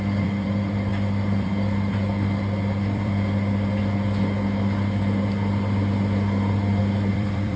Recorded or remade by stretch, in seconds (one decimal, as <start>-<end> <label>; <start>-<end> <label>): 0.0-3.8 remade; 3.8-7.1 recorded; 7.1-7.6 remade